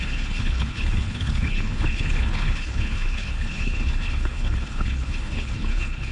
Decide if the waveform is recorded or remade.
remade